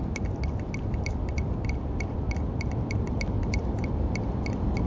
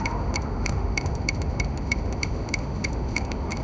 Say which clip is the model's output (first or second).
second